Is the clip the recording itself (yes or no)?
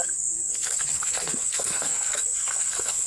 no